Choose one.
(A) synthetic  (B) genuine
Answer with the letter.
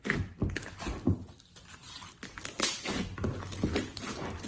B